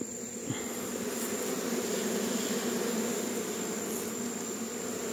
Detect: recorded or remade recorded